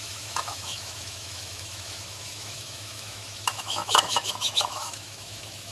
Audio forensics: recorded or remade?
remade